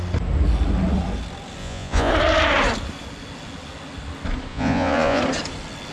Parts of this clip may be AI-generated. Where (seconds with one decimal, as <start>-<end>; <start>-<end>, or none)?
1.6-2.1; 4.5-5.2